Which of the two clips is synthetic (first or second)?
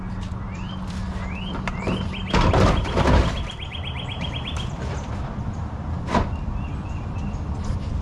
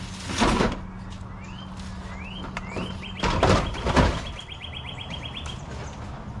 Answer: first